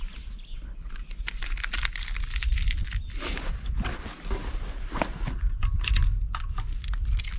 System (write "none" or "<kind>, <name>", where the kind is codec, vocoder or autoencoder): none